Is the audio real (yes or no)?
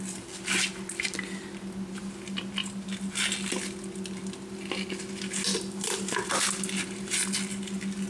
yes